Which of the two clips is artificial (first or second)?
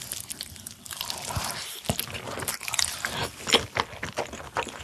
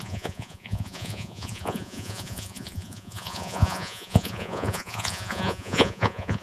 second